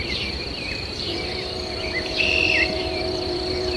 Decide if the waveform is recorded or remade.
remade